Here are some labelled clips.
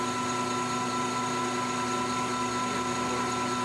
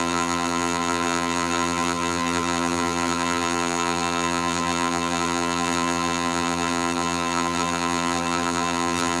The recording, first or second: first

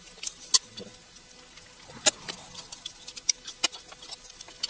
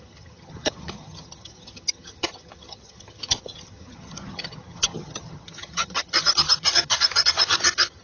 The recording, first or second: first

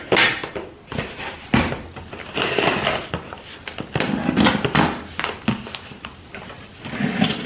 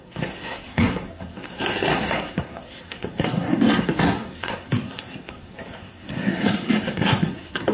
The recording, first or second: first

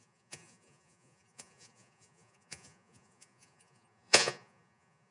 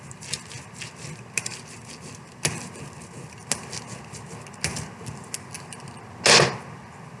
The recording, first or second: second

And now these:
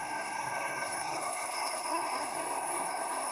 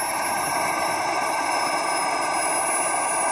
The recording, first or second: second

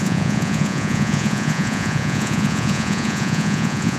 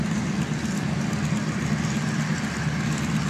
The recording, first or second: second